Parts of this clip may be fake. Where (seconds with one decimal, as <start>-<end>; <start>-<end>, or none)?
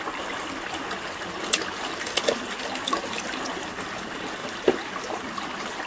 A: none